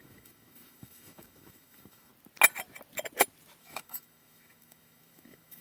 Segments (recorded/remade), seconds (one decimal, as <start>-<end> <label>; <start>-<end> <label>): 0.0-2.1 remade; 2.1-3.6 recorded; 3.6-5.6 remade